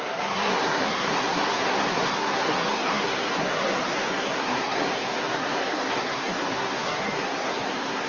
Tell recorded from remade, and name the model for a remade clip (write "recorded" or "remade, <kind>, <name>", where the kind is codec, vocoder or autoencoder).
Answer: remade, codec, SNAC